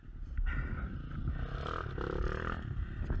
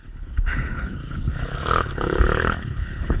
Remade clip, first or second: second